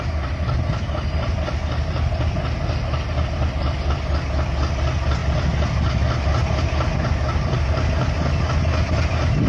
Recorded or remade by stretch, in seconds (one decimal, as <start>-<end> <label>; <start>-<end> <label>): 0.0-9.5 recorded